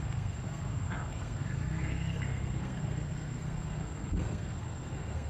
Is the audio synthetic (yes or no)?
yes